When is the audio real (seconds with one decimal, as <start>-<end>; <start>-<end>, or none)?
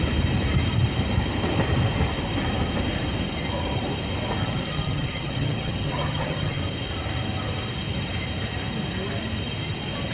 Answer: 0.0-4.4; 6.6-10.1